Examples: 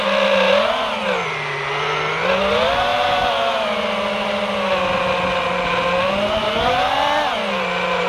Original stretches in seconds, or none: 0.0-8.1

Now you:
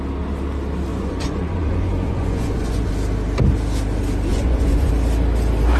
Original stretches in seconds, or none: 0.0-0.9; 2.9-4.3; 4.9-5.8